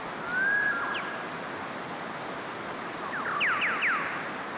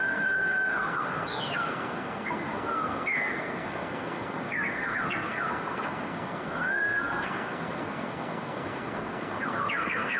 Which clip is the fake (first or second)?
second